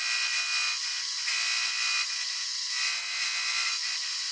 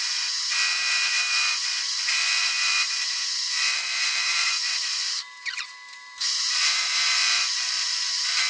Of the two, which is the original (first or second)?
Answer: first